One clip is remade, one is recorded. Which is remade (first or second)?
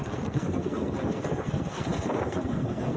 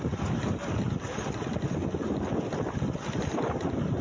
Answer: first